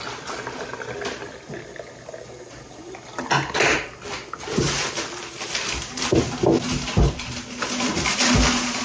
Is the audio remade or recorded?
recorded